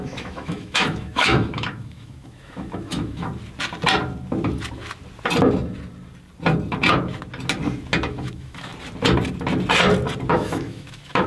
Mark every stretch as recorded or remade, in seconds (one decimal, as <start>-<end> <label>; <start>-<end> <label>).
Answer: 0.0-3.3 remade; 3.3-8.1 recorded; 8.1-8.7 remade; 8.7-10.3 recorded; 10.3-11.3 remade